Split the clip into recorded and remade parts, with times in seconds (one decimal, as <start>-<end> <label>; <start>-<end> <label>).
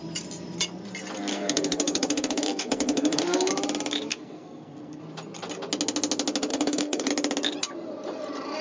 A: 0.0-1.3 recorded; 1.3-3.5 remade; 3.5-4.1 recorded; 4.1-5.0 remade; 5.0-6.5 recorded; 6.5-7.1 remade; 7.1-8.6 recorded